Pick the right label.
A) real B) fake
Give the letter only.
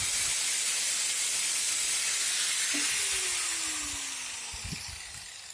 A